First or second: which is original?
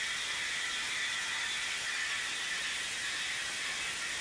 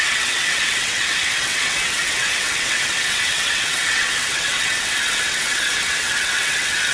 first